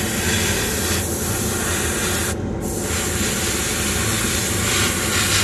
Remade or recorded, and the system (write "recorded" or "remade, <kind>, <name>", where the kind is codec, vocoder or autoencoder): recorded